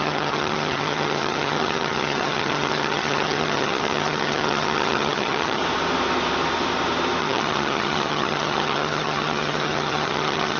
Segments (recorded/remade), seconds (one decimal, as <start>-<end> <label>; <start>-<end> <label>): 0.0-5.6 remade; 5.6-7.2 recorded; 7.2-10.6 remade